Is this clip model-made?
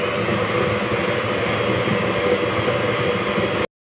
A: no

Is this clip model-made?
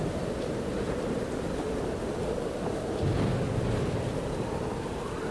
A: no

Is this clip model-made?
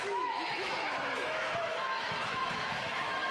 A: yes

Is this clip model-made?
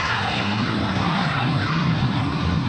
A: yes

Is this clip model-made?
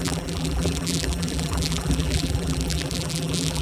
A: yes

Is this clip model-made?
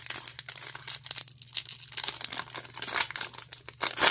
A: no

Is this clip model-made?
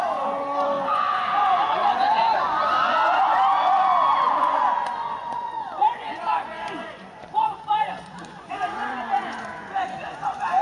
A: yes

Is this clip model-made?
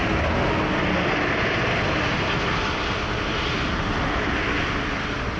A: no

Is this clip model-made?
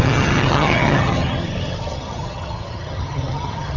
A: yes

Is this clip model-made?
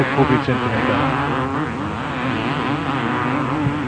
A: no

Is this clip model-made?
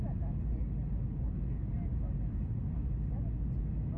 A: no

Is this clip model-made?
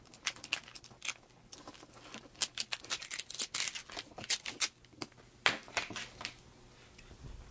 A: no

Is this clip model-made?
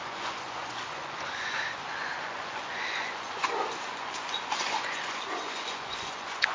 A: yes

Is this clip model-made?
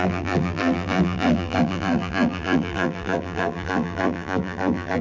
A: yes